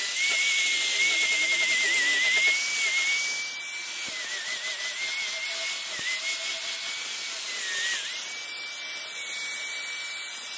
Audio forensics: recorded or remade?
recorded